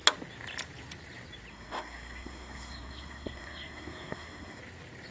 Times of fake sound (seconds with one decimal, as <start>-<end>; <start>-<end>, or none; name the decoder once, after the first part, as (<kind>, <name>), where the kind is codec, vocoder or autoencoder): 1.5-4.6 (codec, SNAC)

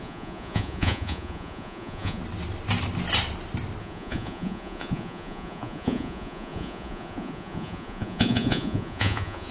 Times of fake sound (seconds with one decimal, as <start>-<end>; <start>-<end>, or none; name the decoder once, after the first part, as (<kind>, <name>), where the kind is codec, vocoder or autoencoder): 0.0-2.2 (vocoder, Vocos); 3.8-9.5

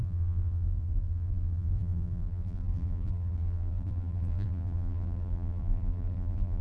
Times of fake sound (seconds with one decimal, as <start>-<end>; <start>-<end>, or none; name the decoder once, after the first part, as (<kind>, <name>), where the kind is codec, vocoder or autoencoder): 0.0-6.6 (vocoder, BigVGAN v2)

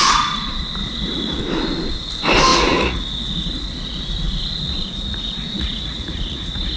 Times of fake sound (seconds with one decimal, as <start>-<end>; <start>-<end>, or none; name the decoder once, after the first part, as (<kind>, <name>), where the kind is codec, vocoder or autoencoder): 0.8-1.4 (vocoder, Vocos); 2.5-6.8